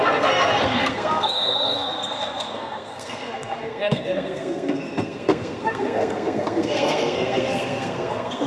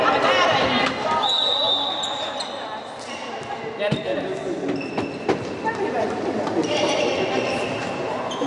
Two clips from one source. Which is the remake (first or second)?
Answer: first